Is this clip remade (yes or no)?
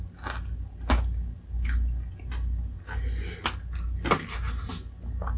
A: no